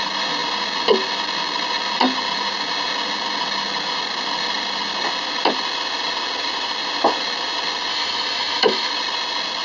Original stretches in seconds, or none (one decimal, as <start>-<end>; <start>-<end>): 0.0-7.9; 8.9-9.6

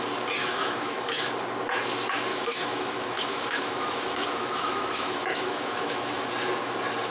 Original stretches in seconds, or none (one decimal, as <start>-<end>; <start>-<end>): 0.0-0.4; 1.3-2.3; 6.3-7.1

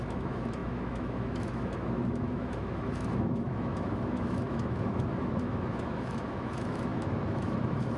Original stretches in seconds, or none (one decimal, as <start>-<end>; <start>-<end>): none

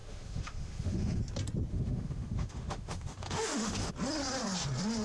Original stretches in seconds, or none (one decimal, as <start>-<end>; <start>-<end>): 1.2-1.7; 3.9-5.0

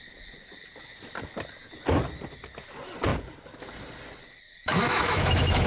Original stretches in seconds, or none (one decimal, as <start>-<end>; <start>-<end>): 0.0-4.6

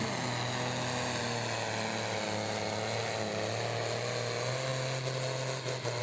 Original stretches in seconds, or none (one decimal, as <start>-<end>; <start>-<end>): 0.0-6.0

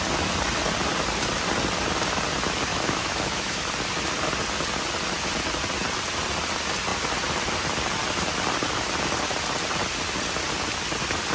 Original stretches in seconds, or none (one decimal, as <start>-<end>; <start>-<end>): 0.0-2.7; 3.7-11.3